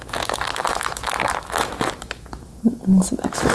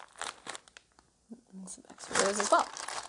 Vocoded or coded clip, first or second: first